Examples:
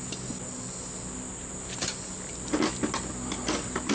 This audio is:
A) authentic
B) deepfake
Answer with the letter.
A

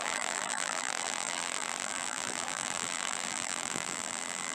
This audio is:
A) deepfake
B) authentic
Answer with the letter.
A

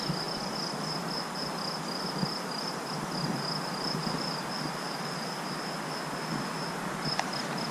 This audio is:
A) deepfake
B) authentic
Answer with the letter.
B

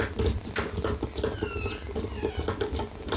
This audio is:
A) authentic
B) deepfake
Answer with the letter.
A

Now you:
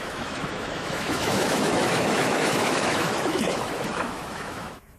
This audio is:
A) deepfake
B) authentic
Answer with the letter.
A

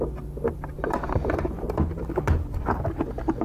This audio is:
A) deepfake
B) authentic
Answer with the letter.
B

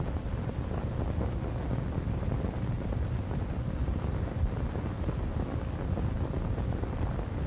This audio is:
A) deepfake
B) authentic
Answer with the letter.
B